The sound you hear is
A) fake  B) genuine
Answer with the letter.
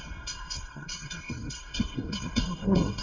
A